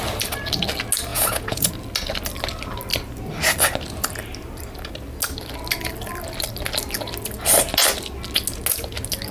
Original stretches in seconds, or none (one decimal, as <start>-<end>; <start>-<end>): 0.0-1.1; 1.7-9.3